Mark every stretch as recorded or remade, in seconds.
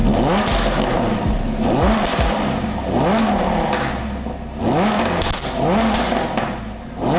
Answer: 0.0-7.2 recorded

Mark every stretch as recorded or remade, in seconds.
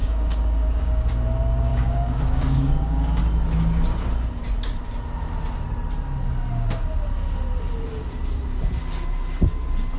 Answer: 0.0-0.9 remade; 0.9-1.7 recorded; 1.7-3.2 remade; 3.2-10.0 recorded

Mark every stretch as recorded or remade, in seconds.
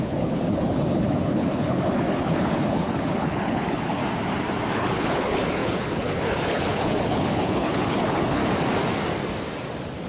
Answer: 0.0-4.0 remade; 4.0-4.7 recorded; 4.7-8.4 remade; 8.4-10.1 recorded